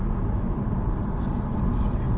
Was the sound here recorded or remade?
recorded